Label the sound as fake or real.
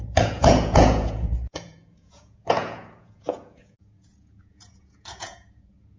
fake